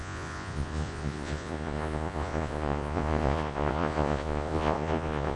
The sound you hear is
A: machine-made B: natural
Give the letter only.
A